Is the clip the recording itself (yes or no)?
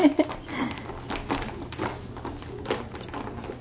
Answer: yes